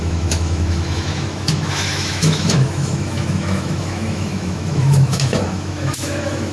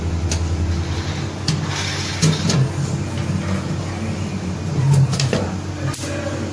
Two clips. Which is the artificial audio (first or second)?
first